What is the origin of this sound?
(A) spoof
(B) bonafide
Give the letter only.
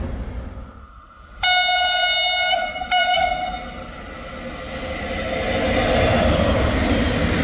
B